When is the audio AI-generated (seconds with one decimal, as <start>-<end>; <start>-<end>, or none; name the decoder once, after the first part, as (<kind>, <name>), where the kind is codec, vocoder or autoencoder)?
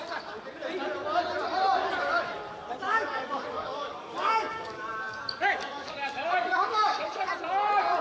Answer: 2.9-7.3 (codec, DAC)